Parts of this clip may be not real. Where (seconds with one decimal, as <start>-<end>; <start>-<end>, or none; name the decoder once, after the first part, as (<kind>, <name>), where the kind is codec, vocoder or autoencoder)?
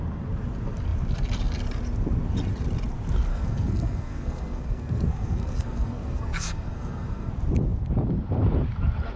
3.3-7.3 (codec, SNAC)